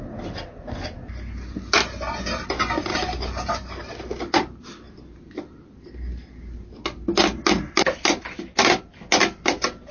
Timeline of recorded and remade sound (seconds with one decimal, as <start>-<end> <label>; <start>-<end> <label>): 0.0-9.9 recorded